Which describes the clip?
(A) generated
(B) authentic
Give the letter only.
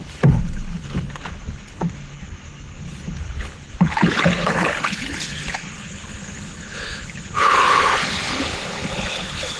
A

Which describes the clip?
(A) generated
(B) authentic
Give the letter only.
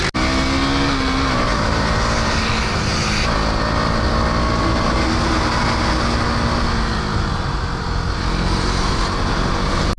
B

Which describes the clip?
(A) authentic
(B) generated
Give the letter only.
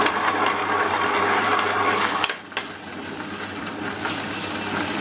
A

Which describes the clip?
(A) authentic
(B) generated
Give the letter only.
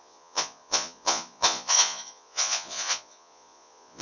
B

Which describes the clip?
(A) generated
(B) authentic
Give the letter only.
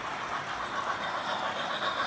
B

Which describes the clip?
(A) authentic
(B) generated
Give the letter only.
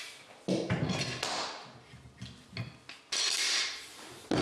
A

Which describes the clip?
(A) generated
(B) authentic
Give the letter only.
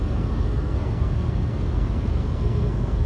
A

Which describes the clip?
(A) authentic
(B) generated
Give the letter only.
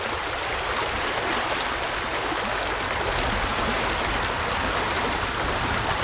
A